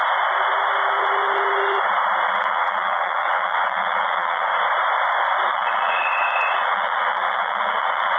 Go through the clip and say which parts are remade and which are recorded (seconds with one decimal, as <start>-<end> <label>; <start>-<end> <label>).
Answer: 0.0-2.3 recorded; 2.3-4.5 remade; 4.5-5.5 recorded; 5.5-8.2 remade